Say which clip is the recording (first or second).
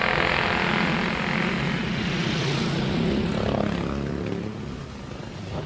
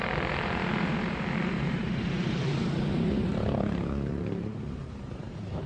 first